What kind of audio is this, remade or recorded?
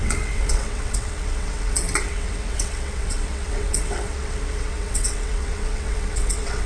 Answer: remade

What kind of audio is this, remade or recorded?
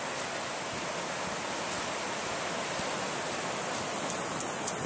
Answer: recorded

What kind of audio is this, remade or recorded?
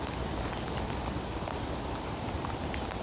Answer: recorded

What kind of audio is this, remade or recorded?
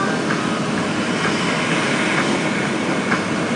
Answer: recorded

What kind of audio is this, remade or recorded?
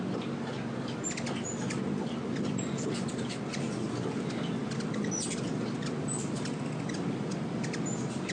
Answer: recorded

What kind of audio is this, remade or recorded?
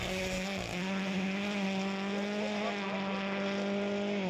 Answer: recorded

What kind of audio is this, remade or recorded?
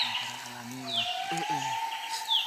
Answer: recorded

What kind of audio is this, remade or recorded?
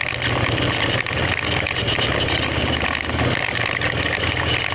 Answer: recorded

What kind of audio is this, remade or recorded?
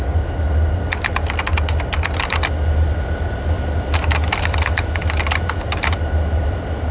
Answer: recorded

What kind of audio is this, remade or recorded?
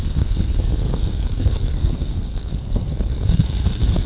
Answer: remade